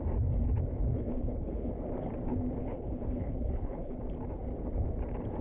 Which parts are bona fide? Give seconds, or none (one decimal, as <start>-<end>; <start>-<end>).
0.0-0.9; 1.7-2.6; 4.0-5.4